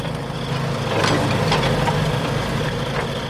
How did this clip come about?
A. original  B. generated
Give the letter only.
A